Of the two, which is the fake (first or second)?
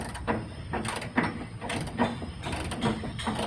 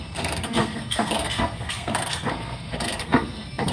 second